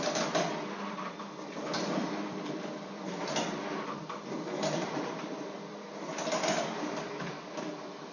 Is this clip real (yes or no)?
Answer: no